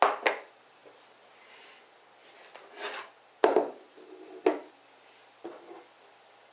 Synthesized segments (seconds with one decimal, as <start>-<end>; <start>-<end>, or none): none